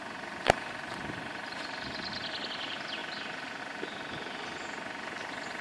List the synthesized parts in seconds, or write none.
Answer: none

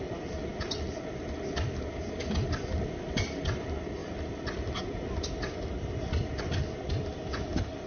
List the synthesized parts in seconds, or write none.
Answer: none

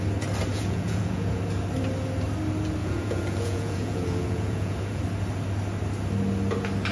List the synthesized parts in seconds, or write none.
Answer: 0.5-1.4; 2.8-5.0

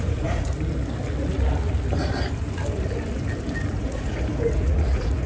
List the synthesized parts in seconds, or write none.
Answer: 0.0-0.5; 3.7-5.3

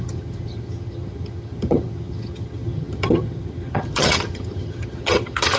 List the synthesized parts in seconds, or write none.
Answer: 0.0-5.6